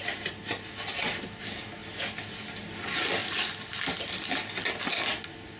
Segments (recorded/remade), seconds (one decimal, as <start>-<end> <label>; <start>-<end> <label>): 0.0-5.6 recorded